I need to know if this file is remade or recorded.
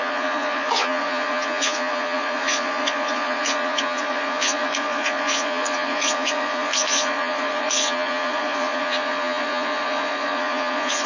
remade